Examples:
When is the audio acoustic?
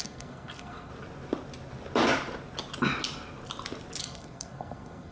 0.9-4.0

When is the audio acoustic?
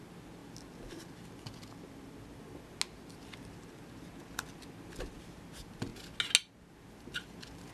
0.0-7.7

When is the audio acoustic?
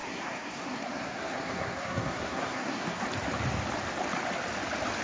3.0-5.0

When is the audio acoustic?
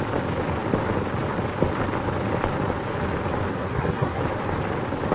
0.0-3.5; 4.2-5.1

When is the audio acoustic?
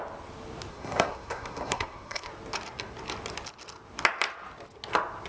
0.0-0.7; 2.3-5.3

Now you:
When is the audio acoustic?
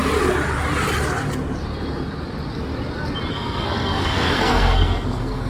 0.0-3.3